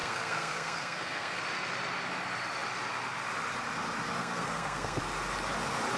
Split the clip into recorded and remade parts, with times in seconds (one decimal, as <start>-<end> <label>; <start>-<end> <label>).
0.0-1.4 remade; 1.4-4.2 recorded; 4.2-5.0 remade; 5.0-6.0 recorded